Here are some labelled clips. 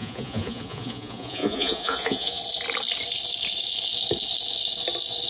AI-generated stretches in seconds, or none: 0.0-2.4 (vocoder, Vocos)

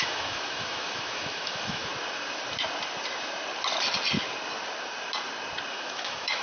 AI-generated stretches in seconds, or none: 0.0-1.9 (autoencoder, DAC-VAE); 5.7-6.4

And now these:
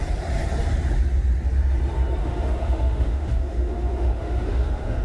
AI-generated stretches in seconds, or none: 2.2-5.0 (autoencoder, DAC-VAE)